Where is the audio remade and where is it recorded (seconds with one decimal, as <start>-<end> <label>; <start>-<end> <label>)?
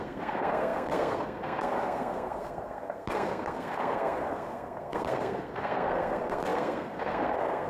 0.0-7.7 remade